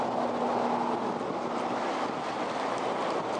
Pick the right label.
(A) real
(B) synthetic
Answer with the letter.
A